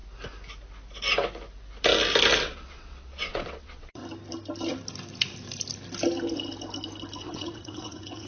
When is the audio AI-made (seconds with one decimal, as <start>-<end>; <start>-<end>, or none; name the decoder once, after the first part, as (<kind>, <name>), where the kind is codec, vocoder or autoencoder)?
2.4-4.0 (vocoder, WaveNeXt); 7.2-8.3